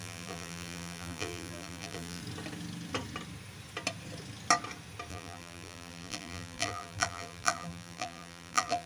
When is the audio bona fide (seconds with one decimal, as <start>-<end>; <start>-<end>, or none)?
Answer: 2.2-5.1